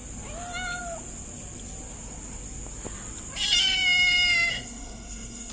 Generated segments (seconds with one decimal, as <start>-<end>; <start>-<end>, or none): 4.5-5.5